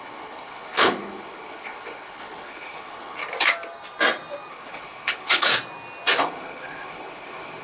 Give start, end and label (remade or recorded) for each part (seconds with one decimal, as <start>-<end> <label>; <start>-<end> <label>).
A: 0.0-3.2 remade; 3.2-4.5 recorded; 4.5-5.5 remade; 5.5-6.2 recorded; 6.2-7.6 remade